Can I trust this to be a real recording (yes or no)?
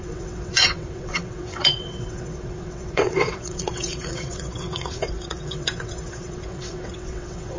no